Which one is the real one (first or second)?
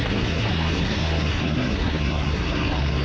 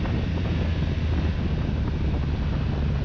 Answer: second